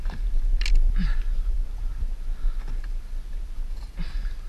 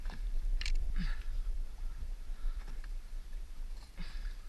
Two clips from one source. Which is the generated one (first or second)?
second